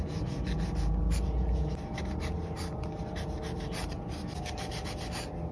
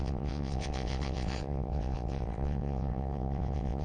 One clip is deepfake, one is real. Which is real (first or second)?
first